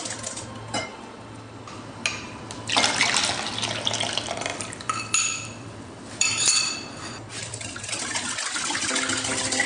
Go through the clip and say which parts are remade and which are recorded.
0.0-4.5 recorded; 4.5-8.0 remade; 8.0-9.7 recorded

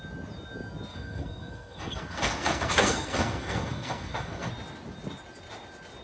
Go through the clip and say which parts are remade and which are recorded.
0.0-0.9 recorded; 0.9-4.5 remade; 4.5-6.0 recorded

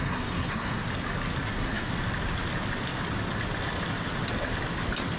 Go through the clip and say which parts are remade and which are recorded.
0.0-0.8 remade; 0.8-1.5 recorded; 1.5-1.9 remade; 1.9-5.2 recorded

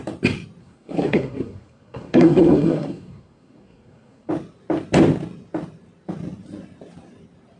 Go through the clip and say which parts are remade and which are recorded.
0.0-0.6 recorded; 0.6-4.3 remade; 4.3-7.6 recorded

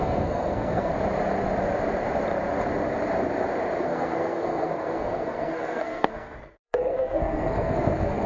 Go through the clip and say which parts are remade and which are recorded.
0.0-0.9 remade; 0.9-3.8 recorded; 3.8-8.3 remade

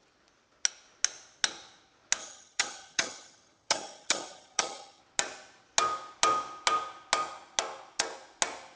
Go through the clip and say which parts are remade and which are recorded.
0.0-2.2 recorded; 2.2-5.0 remade; 5.0-8.8 recorded